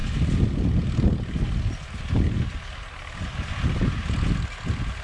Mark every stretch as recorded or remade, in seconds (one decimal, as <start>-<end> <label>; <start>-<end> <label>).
0.0-5.0 recorded